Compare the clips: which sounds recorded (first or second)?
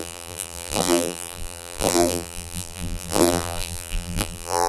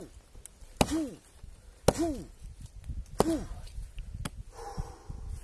second